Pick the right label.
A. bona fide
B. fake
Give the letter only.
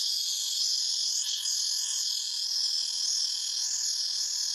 A